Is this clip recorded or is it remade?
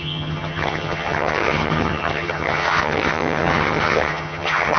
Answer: remade